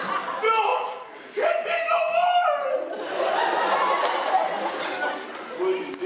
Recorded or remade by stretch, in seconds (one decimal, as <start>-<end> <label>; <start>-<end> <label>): 0.0-0.7 recorded; 0.7-1.5 remade; 1.5-6.1 recorded